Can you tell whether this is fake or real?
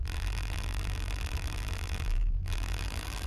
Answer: fake